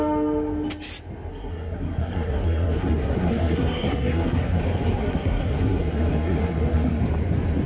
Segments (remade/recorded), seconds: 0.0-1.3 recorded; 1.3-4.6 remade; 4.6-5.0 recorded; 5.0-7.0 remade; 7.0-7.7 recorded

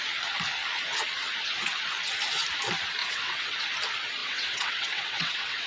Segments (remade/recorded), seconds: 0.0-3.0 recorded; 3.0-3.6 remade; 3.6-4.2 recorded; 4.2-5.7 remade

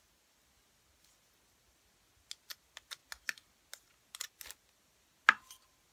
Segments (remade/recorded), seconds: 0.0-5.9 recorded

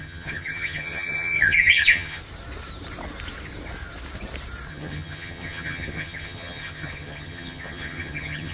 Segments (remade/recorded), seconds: 0.0-2.2 remade; 2.2-4.7 recorded; 4.7-8.5 remade

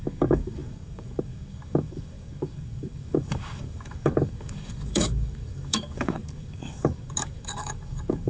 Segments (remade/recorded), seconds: 0.0-8.3 remade

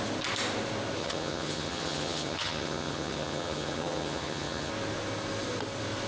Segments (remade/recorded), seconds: 0.0-1.0 recorded; 1.0-4.7 remade; 4.7-6.1 recorded